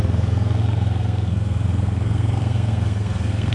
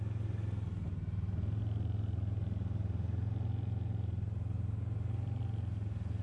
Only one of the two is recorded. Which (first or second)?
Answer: second